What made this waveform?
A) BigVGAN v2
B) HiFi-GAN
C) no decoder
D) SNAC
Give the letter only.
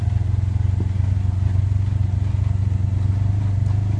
C